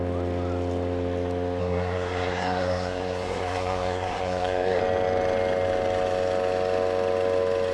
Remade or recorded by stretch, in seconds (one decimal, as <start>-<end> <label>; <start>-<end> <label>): 0.0-1.6 recorded; 1.6-4.8 remade; 4.8-7.7 recorded